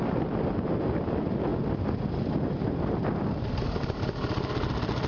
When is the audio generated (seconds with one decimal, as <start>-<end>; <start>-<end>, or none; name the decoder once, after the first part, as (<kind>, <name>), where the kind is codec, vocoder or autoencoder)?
none